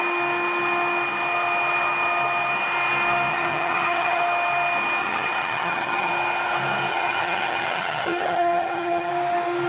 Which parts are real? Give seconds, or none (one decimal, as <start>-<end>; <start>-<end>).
0.0-3.3; 4.2-5.0; 6.1-6.9; 9.1-9.7